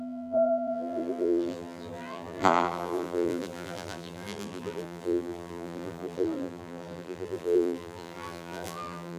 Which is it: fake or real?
fake